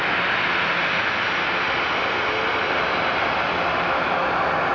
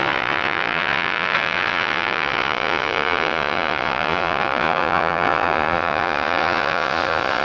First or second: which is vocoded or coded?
second